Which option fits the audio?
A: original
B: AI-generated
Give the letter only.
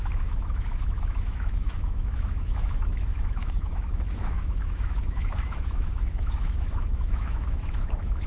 B